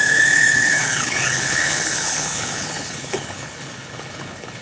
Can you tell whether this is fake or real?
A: fake